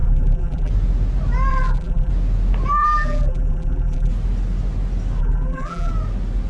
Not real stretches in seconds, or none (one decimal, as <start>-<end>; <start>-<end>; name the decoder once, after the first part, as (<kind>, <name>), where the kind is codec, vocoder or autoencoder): 0.0-0.7 (vocoder, BigVGAN v2); 1.5-2.1; 2.8-4.1; 5.2-5.9